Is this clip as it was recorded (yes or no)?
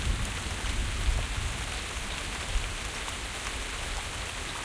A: yes